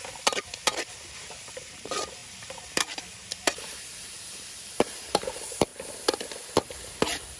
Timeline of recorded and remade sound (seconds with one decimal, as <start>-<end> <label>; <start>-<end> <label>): 0.0-5.7 remade; 5.7-7.4 recorded